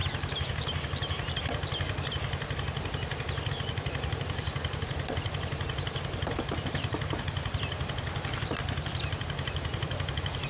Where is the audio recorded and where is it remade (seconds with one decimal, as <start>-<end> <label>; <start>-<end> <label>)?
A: 0.0-10.5 recorded